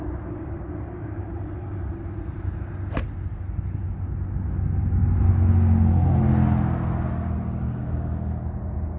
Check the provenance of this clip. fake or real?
real